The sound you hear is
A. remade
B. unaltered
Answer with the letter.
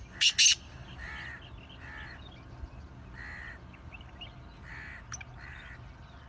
B